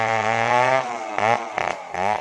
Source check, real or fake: fake